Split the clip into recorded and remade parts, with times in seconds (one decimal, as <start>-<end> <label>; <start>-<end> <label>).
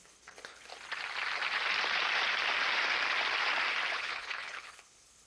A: 0.0-0.7 remade; 0.7-3.9 recorded; 3.9-5.3 remade